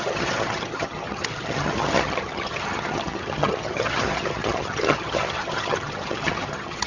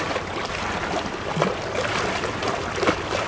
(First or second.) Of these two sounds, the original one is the second